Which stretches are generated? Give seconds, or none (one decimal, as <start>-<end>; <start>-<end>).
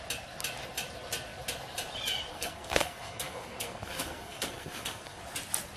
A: 2.3-5.2